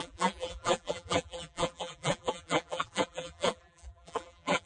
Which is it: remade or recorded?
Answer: remade